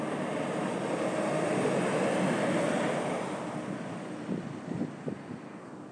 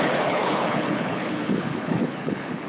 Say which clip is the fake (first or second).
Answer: second